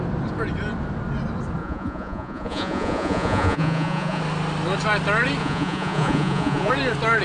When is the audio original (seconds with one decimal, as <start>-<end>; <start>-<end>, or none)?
0.0-1.6; 4.2-5.4; 6.7-7.2

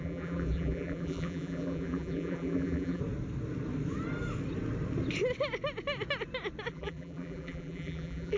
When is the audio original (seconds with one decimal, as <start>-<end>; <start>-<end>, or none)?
3.0-6.7

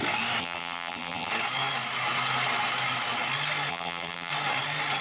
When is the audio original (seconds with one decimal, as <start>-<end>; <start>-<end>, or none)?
0.0-0.4; 1.3-3.7; 4.3-5.0

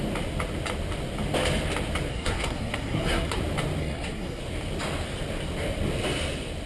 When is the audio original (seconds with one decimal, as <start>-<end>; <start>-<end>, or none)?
0.0-2.1; 3.4-3.8; 4.4-6.7

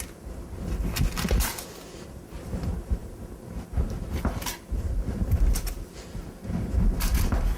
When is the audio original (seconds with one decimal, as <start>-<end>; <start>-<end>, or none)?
0.0-7.6

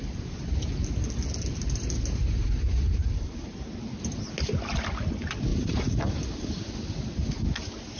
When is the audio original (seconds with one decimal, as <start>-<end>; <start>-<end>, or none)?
0.0-2.2; 3.7-5.5; 6.7-8.0

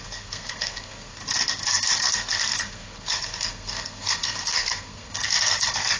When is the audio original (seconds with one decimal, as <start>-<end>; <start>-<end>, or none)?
1.2-2.1

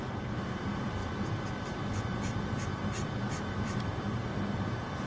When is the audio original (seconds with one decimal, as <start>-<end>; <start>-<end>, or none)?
1.0-2.1; 2.7-5.1